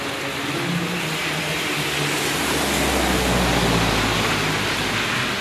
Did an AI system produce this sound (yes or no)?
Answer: no